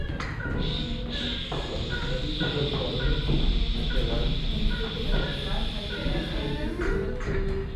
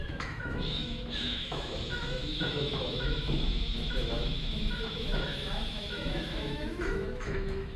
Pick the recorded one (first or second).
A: first